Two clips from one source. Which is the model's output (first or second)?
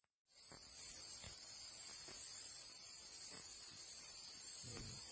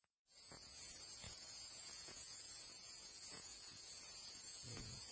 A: second